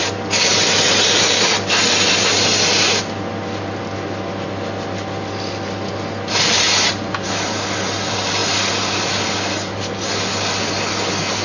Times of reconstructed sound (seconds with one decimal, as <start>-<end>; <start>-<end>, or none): none

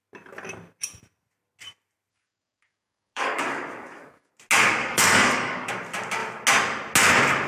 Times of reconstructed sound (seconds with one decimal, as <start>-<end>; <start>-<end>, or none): 2.1-4.3; 4.8-5.7

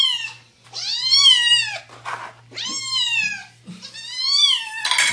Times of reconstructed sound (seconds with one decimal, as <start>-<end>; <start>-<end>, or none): none

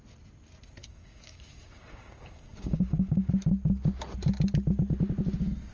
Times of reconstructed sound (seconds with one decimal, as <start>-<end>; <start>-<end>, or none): 0.8-3.3

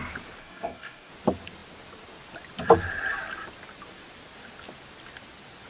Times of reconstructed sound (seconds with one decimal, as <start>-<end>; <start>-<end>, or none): 0.4-1.1

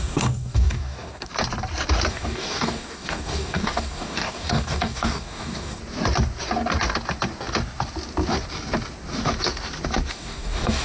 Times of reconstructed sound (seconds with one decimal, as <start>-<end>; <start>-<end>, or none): 0.0-1.3; 2.1-5.8; 10.1-10.8

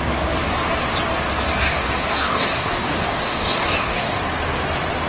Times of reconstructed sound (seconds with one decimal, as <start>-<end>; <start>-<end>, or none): 1.6-4.2

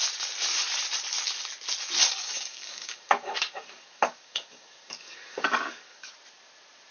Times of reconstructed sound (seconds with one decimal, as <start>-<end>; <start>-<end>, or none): 2.0-6.1